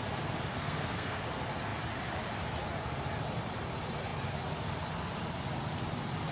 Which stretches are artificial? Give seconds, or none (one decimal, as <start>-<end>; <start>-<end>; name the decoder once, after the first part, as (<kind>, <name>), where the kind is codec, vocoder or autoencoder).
0.5-1.2 (codec, SNAC)